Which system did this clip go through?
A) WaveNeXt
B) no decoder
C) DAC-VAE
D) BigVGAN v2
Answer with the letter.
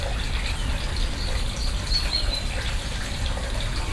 B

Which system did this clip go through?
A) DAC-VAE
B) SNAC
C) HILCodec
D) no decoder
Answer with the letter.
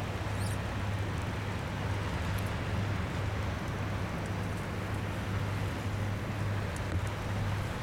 D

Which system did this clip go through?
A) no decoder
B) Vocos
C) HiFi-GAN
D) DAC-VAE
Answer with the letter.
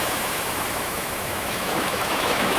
D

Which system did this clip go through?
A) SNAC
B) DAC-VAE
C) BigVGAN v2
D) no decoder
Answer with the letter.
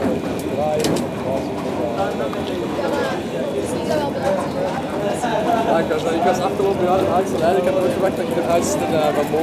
D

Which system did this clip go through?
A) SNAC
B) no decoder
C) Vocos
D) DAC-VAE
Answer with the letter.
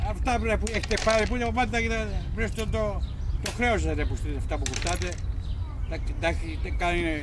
B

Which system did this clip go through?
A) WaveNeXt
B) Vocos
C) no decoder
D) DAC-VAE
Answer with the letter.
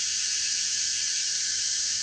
D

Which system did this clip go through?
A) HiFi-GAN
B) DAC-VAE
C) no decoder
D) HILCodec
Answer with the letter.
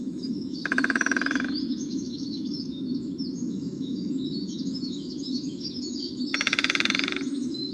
B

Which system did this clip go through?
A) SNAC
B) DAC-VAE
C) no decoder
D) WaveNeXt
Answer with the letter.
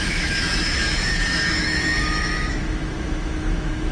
B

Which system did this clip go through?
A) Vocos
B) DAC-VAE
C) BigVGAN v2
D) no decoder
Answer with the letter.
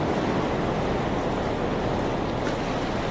D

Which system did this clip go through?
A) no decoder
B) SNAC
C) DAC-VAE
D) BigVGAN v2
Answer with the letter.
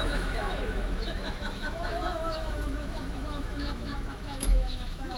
C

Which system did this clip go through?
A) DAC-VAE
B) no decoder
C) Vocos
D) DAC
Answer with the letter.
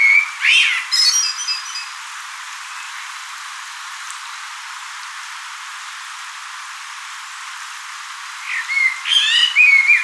B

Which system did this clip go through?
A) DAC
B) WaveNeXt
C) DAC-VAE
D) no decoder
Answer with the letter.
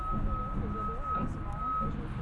D